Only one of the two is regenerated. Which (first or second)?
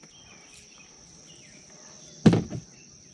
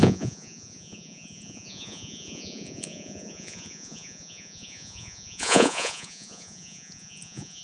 second